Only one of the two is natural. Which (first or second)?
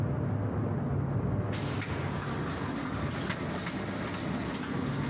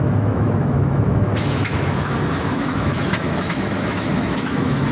first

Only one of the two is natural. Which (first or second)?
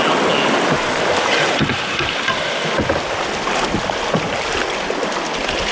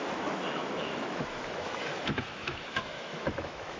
first